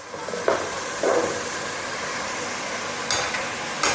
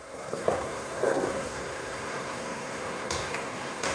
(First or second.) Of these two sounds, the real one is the first